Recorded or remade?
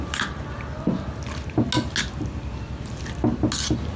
recorded